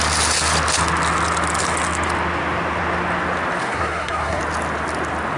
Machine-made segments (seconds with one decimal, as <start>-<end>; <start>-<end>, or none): 3.6-4.4